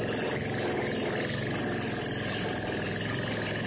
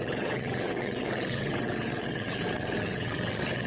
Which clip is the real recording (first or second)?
first